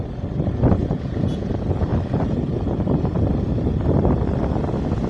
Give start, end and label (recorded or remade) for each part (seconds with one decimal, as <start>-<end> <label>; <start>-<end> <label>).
0.0-0.8 recorded; 0.8-1.5 remade; 1.5-5.1 recorded